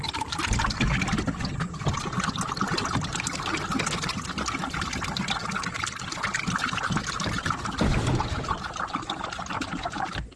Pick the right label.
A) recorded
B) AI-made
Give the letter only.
A